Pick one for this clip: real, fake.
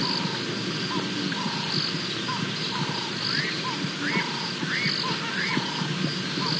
real